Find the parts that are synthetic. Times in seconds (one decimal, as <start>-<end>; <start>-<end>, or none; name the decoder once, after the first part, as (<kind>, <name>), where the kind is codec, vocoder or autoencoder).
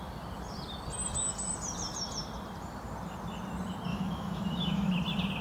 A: 3.9-4.9 (autoencoder, DAC-VAE)